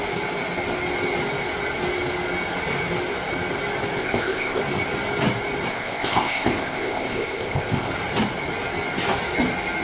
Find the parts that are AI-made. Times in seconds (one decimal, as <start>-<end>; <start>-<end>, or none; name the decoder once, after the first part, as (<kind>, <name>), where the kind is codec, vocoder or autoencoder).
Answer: 4.0-4.6 (codec, ZipCodec); 5.7-7.9